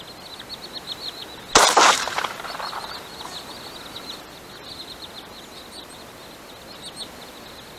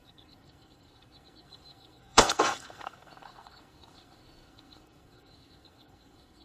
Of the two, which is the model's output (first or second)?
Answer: second